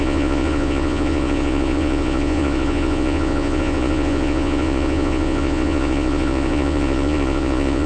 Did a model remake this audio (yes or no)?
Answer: yes